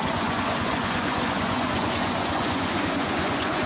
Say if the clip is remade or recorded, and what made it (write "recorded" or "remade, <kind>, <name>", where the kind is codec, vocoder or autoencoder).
remade, vocoder, Vocos